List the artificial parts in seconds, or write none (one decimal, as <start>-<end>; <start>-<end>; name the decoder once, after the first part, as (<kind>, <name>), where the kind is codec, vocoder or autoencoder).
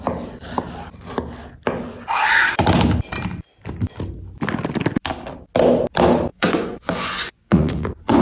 6.3-8.2 (vocoder, Vocos)